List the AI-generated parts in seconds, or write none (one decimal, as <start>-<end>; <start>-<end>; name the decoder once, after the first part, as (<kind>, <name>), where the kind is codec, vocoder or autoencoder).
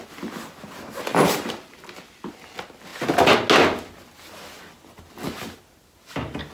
1.1-2.3 (vocoder, BigVGAN v2)